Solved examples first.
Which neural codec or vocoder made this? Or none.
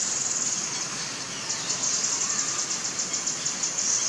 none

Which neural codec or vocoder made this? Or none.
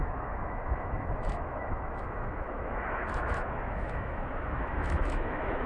autoencoder, DAC-VAE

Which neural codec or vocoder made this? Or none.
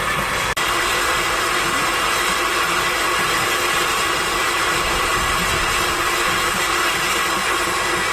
vocoder, BigVGAN v2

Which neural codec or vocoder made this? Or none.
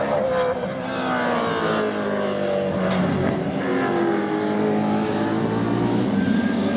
none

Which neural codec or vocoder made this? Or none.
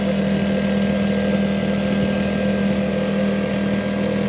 none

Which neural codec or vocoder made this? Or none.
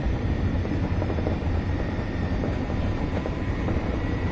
vocoder, BigVGAN v2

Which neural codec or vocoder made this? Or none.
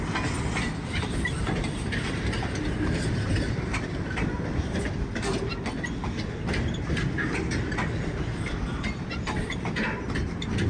none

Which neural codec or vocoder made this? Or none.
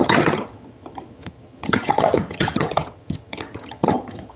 vocoder, HiFi-GAN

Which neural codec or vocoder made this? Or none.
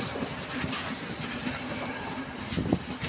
none